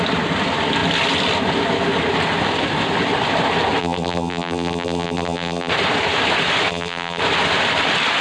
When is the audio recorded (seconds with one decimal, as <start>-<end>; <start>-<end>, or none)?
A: 0.0-3.8; 5.7-6.7; 7.2-8.2